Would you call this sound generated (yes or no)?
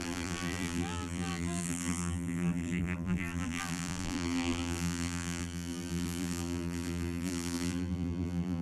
yes